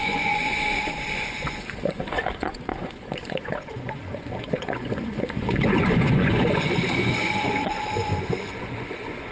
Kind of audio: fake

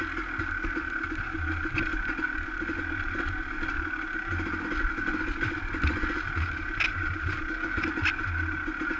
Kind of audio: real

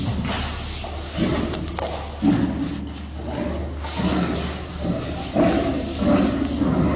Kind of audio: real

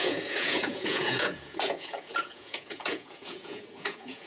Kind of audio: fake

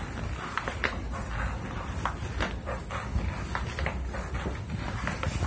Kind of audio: real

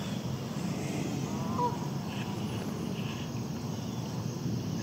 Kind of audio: real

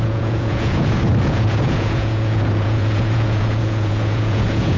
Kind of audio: fake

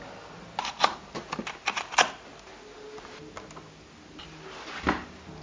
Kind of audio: real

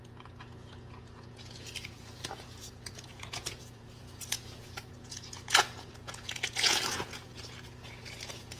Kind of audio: fake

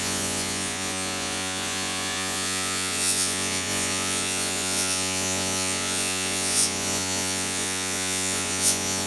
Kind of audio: fake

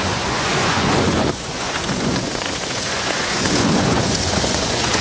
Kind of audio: fake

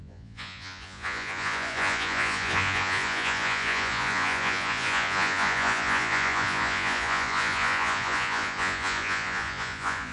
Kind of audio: fake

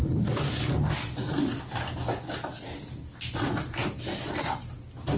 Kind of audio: real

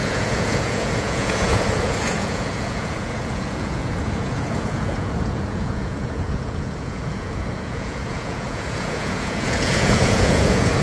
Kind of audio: fake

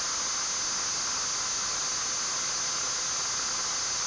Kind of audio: real